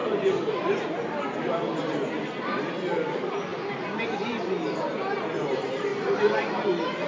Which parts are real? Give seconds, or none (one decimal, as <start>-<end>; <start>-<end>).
0.0-7.1